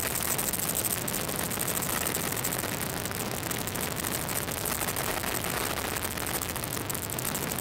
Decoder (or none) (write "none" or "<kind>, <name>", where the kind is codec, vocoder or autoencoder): none